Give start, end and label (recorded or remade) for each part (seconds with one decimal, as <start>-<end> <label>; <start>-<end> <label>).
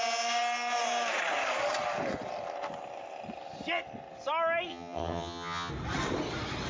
0.0-4.7 recorded; 4.7-5.7 remade; 5.7-6.7 recorded